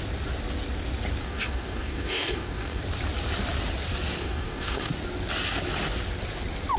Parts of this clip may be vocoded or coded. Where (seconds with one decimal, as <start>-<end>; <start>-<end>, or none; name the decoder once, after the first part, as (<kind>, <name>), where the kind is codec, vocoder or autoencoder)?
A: 1.2-2.8 (codec, DAC); 4.2-4.9